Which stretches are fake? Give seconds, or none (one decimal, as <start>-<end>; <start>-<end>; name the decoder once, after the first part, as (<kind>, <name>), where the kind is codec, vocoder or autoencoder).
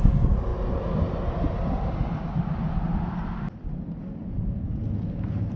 4.2-4.8 (vocoder, Vocos)